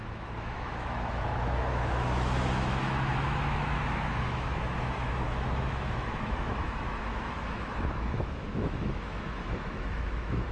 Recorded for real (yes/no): no